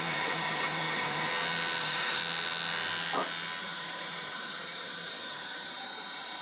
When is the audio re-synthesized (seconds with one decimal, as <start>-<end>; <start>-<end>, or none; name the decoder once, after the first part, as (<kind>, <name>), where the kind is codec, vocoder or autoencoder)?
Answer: 0.0-1.3 (vocoder, HiFi-GAN); 1.8-2.2; 3.6-6.4

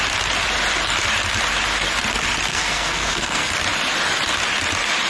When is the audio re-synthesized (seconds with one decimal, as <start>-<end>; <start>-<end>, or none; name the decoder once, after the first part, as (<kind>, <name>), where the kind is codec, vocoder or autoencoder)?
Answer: 2.5-3.5 (codec, SNAC)

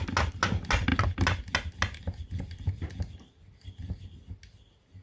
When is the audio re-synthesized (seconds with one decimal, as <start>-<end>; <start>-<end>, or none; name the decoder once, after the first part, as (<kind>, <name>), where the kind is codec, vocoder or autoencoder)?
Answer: none

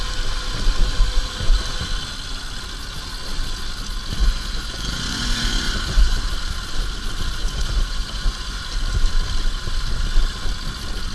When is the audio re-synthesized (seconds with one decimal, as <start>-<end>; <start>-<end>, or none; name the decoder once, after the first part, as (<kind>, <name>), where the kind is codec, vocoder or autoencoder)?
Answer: 4.2-6.2 (vocoder, Vocos); 7.4-8.6

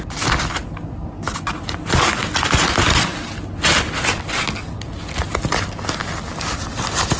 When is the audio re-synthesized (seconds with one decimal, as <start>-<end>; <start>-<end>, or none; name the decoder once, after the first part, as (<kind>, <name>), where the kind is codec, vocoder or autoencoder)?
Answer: none

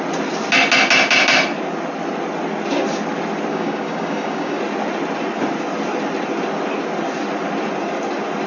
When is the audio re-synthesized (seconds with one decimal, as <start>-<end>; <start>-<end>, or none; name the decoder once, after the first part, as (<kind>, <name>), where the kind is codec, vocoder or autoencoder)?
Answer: 3.5-4.6 (codec, DAC)

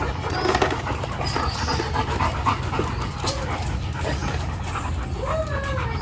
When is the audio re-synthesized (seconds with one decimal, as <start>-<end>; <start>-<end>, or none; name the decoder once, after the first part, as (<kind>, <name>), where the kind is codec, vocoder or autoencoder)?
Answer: none

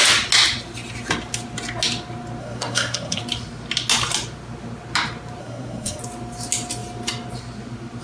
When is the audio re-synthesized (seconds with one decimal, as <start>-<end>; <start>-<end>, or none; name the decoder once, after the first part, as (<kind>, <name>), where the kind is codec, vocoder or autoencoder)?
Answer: 2.4-3.2 (codec, SNAC); 5.4-6.0